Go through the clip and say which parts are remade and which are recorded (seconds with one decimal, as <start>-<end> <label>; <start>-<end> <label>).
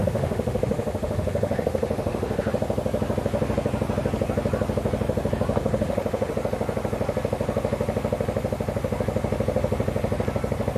0.0-2.5 remade; 2.5-5.6 recorded; 5.6-6.3 remade; 6.3-10.8 recorded